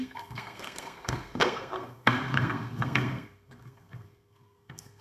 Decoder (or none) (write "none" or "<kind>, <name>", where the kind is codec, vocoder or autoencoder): codec, SNAC